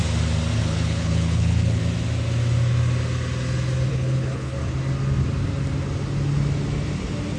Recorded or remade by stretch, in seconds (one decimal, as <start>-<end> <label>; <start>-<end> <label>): 0.0-0.6 recorded; 0.6-1.8 remade; 1.8-3.9 recorded; 3.9-4.6 remade; 4.6-7.4 recorded